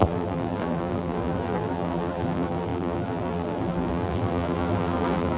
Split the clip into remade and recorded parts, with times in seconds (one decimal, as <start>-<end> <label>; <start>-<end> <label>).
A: 0.0-5.4 remade